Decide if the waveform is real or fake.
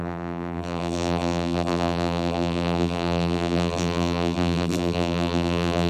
fake